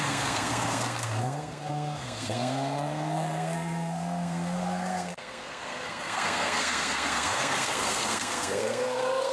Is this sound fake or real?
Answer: fake